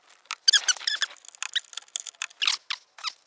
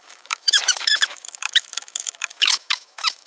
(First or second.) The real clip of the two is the first